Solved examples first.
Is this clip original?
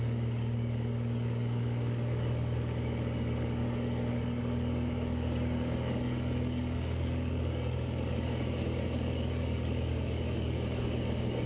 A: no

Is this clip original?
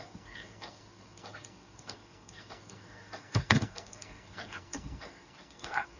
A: no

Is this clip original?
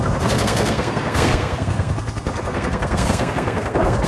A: no